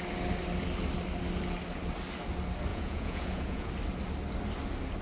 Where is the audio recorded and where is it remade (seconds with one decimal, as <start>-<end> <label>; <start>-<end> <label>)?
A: 0.0-2.7 recorded; 2.7-3.7 remade; 3.7-5.0 recorded